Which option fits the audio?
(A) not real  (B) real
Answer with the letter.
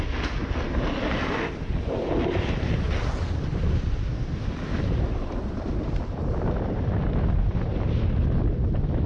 B